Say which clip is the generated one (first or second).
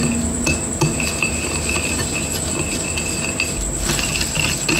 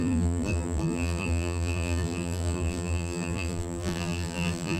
second